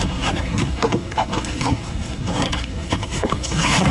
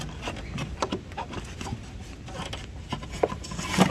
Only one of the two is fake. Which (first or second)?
first